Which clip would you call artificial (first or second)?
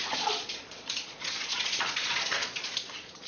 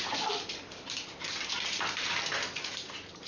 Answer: first